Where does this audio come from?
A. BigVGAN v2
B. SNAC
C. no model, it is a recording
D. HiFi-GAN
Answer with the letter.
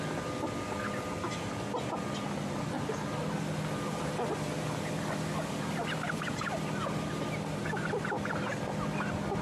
C